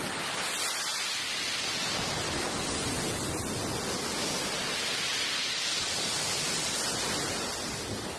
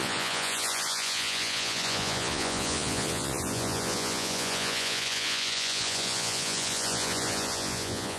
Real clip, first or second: first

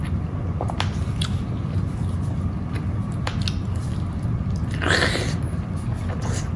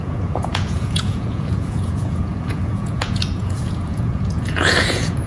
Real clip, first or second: first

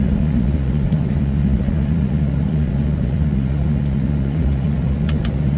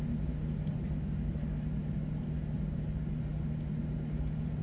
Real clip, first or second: second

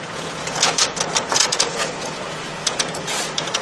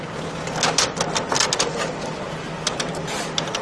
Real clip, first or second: second